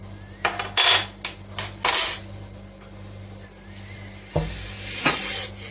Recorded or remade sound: recorded